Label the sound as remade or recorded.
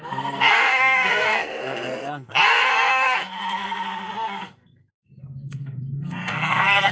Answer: remade